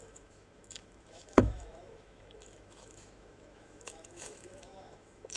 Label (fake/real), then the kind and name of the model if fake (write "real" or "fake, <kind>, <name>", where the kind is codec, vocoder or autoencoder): fake, autoencoder, DAC-VAE